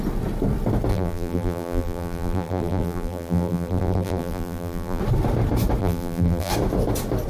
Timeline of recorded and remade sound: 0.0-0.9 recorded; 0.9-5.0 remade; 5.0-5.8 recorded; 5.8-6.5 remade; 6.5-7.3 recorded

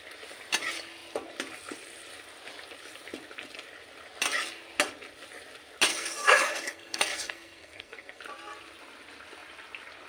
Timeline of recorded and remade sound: 0.0-5.9 recorded; 5.9-8.2 remade; 8.2-10.1 recorded

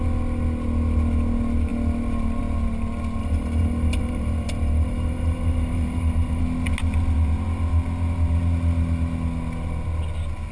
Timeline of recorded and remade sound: 0.0-3.2 recorded; 3.2-6.4 remade; 6.4-10.5 recorded

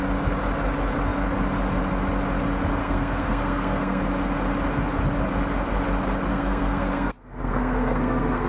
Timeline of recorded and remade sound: 0.0-2.8 recorded; 2.8-4.0 remade; 4.0-6.3 recorded; 6.3-8.5 remade

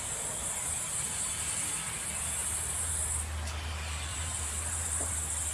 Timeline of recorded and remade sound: 0.0-2.4 recorded; 2.4-2.9 remade; 2.9-4.1 recorded; 4.1-5.1 remade; 5.1-5.5 recorded

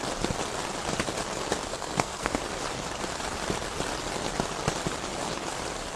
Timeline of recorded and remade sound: 0.0-1.7 recorded; 1.7-2.4 remade; 2.4-6.0 recorded

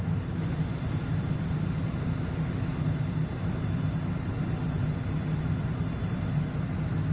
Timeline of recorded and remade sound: 0.0-7.1 recorded